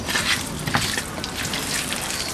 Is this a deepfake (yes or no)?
no